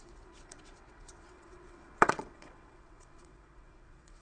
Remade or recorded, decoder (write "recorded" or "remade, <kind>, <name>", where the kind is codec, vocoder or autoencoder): remade, vocoder, WaveNeXt